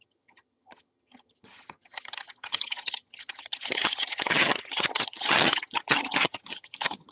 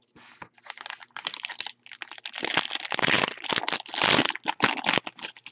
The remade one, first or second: first